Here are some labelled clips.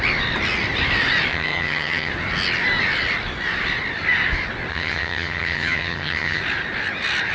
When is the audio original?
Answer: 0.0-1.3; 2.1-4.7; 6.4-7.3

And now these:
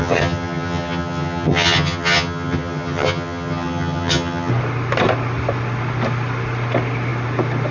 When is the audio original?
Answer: 4.5-7.7

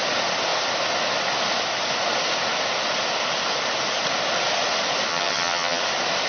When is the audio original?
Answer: 0.0-5.1; 5.8-6.3

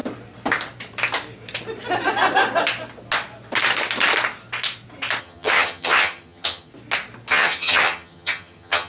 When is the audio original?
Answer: 0.0-5.2; 6.7-7.3

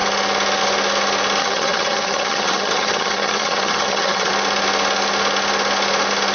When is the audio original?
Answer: 0.0-1.4; 4.3-6.3

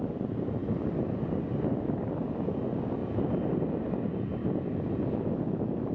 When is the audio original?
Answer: 0.0-5.9

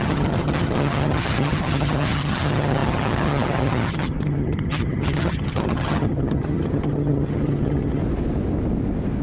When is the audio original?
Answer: 8.0-9.2

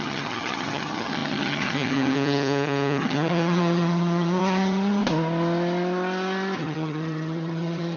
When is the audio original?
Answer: 5.0-6.6